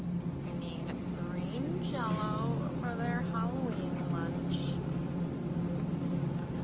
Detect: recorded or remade recorded